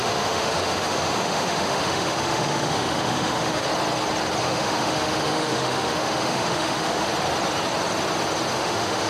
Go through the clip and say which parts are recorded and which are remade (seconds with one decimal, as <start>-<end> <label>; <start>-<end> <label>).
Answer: 0.0-3.6 remade; 3.6-4.4 recorded; 4.4-7.1 remade; 7.1-8.5 recorded; 8.5-9.1 remade